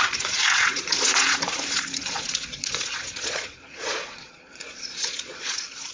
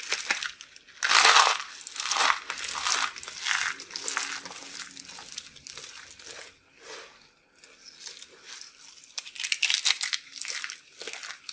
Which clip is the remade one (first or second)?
first